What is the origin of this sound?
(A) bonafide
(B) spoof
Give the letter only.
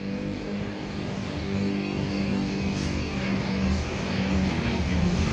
B